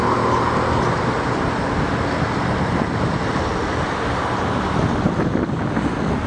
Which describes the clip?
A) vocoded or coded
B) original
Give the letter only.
B